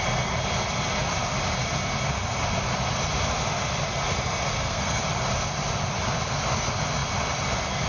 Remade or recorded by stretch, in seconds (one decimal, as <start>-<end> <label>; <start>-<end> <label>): 0.0-4.5 recorded; 4.5-5.0 remade; 5.0-7.9 recorded